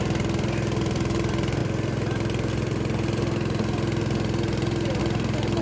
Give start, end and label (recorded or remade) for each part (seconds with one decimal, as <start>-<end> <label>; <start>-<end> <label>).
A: 0.0-5.6 recorded